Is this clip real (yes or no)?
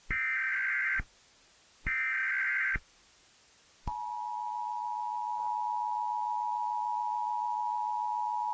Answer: yes